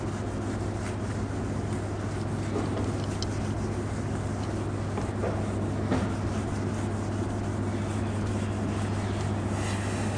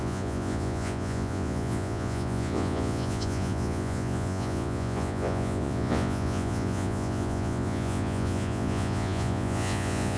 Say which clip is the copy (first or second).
second